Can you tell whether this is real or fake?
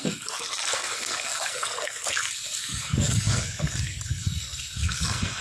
fake